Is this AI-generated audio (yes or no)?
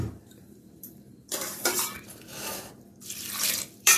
yes